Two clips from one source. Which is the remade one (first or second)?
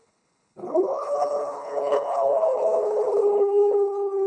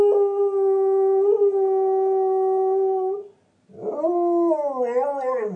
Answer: first